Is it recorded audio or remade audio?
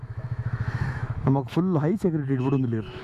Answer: remade